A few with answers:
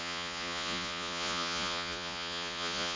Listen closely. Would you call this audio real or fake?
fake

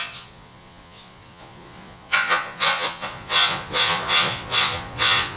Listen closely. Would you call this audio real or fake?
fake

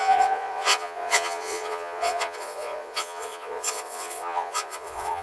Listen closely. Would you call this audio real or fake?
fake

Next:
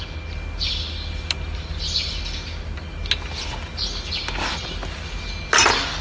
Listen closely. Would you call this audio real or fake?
real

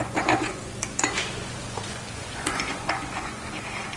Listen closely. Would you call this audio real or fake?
fake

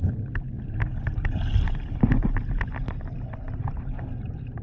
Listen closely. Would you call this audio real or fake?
real